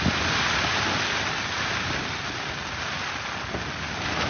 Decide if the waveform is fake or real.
real